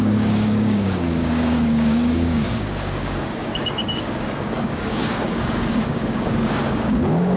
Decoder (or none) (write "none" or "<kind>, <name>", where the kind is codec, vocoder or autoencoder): codec, DAC